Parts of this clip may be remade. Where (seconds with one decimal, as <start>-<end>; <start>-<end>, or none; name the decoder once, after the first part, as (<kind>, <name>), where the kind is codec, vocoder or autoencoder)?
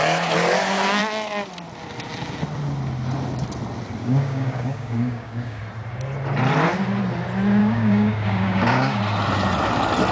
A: 4.0-5.6 (codec, DAC); 7.6-9.0